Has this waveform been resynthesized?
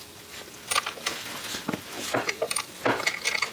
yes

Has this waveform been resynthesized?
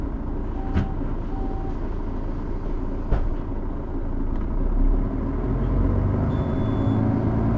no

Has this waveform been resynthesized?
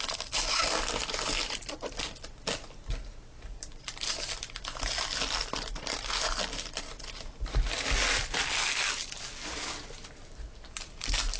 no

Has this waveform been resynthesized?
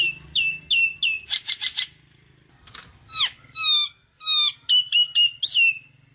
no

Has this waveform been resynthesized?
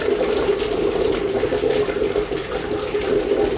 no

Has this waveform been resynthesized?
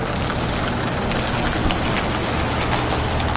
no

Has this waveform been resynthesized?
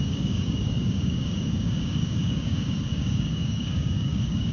yes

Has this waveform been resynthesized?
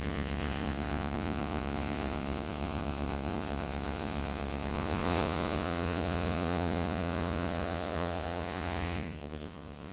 yes